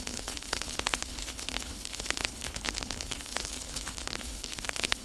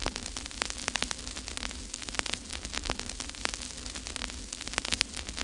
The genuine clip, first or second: second